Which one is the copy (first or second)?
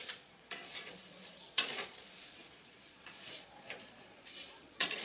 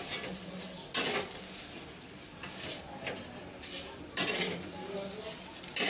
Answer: first